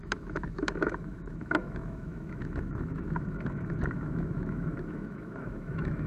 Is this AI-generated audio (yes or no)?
yes